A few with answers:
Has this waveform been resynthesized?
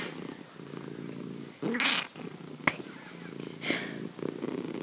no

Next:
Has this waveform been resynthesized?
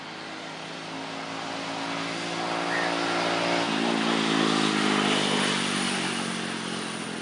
no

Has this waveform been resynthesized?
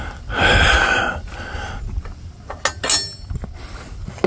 no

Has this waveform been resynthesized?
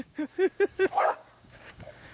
yes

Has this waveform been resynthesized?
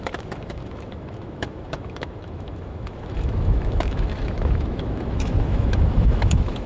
yes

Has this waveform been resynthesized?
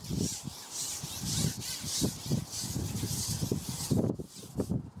no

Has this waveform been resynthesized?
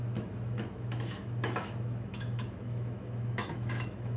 yes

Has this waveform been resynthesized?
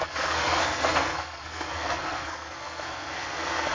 yes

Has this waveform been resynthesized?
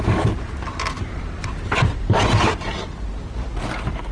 yes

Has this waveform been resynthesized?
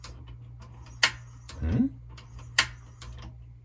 no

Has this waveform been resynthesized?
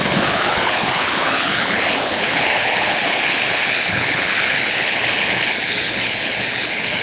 yes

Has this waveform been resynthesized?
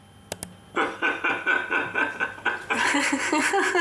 no